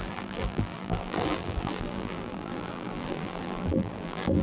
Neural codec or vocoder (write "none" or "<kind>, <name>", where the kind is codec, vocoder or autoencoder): vocoder, BigVGAN v2